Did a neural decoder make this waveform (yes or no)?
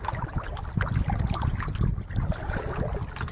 no